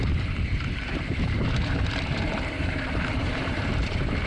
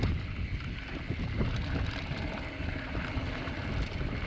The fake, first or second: first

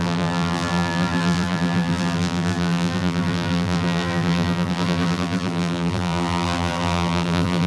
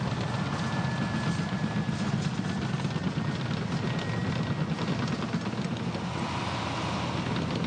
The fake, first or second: first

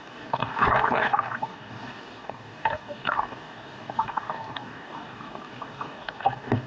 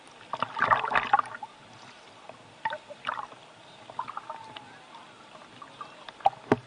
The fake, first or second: first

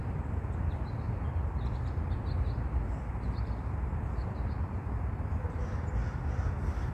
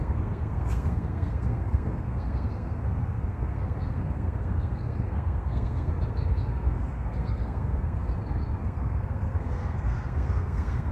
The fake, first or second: second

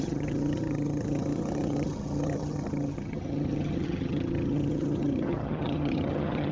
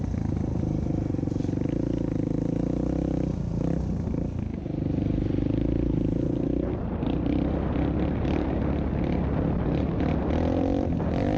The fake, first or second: first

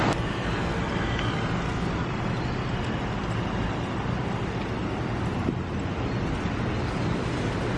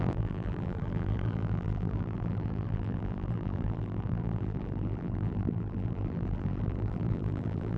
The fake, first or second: second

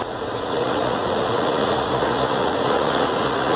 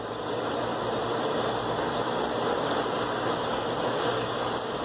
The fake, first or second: first